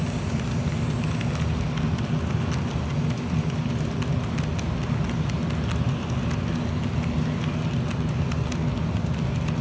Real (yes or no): yes